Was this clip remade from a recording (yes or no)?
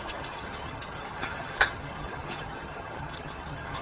yes